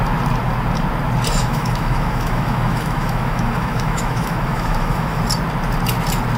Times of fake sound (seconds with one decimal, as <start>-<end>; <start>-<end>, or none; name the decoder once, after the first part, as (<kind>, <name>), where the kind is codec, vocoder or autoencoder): 1.4-5.2 (autoencoder, DAC-VAE)